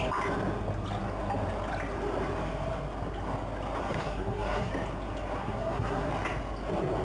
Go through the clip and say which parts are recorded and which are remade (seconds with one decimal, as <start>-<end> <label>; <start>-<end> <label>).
0.0-3.8 recorded; 3.8-4.7 remade; 4.7-5.4 recorded; 5.4-6.1 remade; 6.1-7.0 recorded

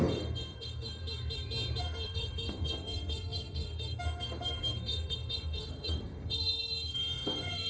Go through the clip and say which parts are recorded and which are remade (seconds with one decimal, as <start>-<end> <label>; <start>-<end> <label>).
0.0-1.0 remade; 1.0-1.8 recorded; 1.8-7.7 remade